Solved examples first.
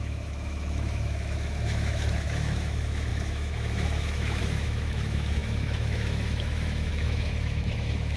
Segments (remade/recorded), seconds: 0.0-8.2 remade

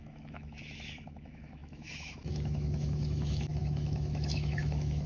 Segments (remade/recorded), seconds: 0.0-5.1 remade